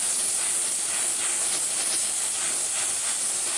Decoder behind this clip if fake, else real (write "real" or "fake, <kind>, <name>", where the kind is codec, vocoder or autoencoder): real